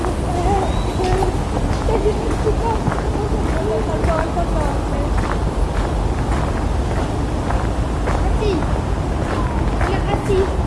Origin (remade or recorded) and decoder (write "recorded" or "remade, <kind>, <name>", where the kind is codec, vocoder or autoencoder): recorded